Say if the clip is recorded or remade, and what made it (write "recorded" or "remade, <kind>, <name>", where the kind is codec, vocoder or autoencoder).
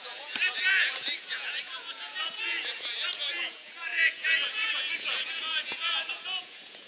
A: remade, vocoder, Vocos